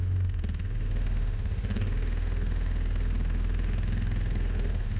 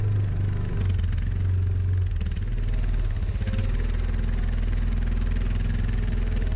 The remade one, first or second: first